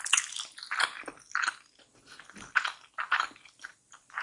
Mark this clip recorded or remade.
recorded